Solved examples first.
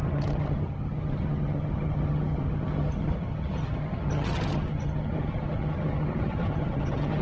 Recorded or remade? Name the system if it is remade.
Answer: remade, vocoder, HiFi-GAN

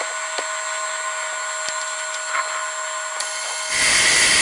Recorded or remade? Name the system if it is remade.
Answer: recorded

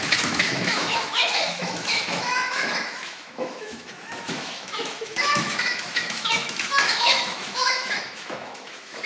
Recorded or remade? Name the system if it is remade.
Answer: remade, autoencoder, DAC-VAE